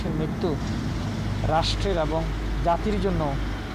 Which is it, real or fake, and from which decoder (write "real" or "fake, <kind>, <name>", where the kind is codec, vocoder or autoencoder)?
real